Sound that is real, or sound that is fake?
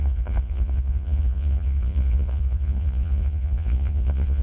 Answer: fake